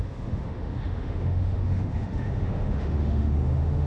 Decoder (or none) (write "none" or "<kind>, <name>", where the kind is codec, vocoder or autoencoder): autoencoder, DAC-VAE